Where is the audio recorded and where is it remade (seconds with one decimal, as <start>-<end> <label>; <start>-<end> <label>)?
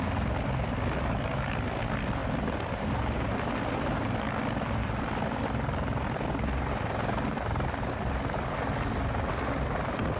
0.0-10.2 recorded